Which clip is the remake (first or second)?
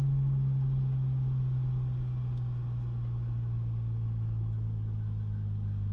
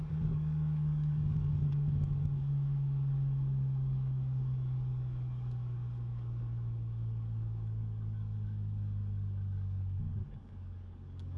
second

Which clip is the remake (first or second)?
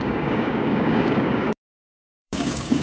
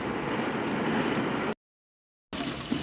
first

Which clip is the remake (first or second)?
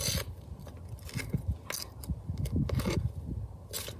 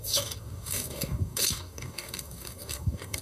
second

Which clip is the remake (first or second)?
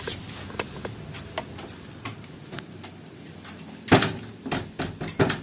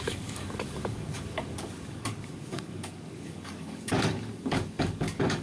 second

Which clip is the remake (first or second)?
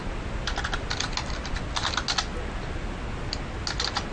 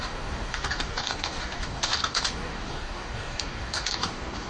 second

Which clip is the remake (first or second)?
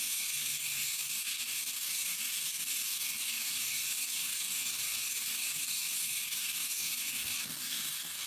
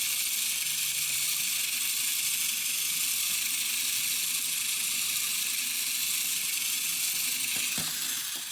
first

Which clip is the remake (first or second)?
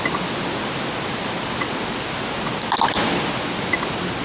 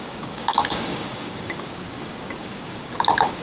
second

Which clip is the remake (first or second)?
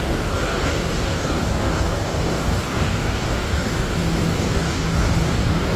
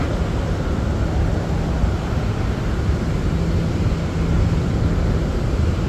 first